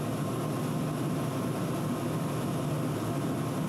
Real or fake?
real